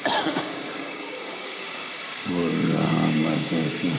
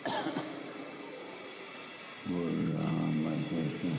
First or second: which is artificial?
first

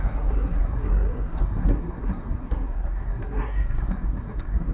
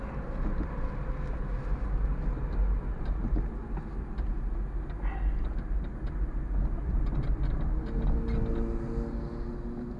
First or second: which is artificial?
first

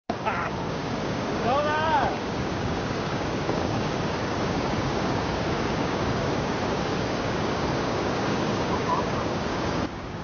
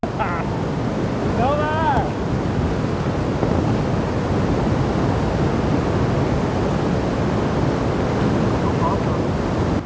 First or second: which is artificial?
first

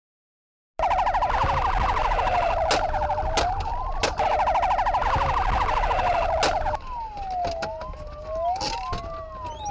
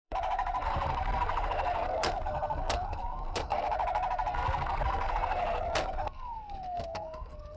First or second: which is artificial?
second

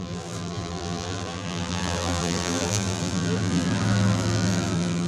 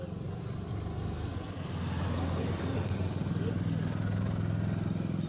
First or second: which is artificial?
first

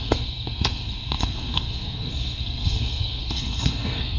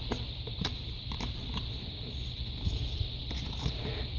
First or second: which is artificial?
first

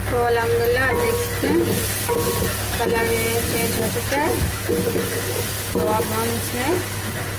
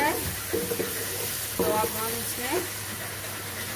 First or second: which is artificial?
second